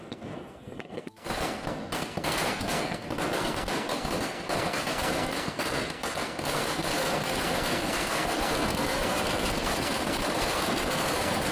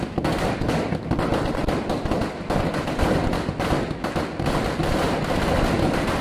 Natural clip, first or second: second